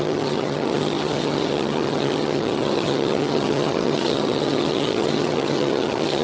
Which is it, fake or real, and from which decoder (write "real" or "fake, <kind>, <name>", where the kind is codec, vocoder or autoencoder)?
fake, vocoder, HiFi-GAN